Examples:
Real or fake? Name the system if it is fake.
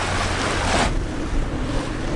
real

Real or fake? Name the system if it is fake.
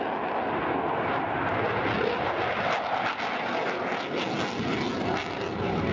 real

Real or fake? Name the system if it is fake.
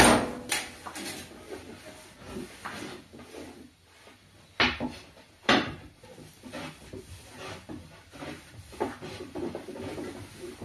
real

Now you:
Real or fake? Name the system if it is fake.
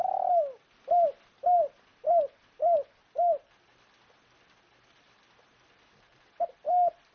real